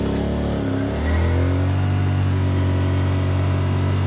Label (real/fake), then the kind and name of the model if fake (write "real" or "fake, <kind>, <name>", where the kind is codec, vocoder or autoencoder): real